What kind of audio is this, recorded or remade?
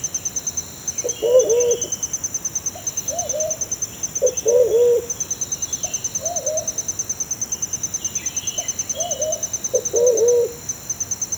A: recorded